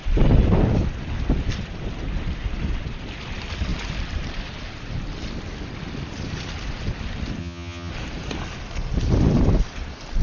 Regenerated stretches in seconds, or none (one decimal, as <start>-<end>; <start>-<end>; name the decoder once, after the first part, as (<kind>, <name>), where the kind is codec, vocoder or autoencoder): 7.4-7.9 (vocoder, HiFi-GAN)